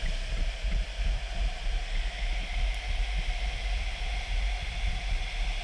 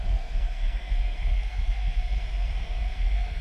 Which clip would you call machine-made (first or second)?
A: second